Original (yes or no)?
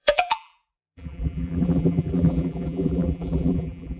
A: no